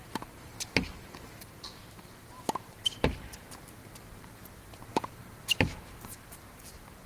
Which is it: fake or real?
fake